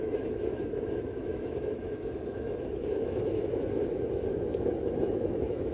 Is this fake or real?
fake